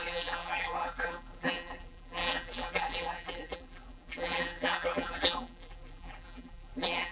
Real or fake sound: fake